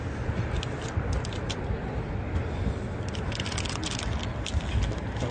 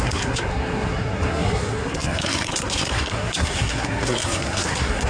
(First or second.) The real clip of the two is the first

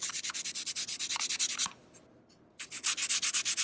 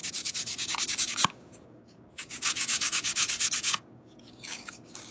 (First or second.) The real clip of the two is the first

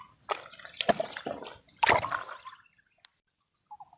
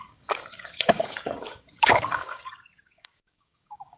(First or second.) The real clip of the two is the first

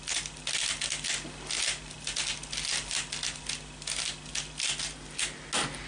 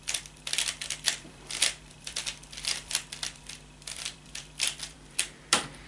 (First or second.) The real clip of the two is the first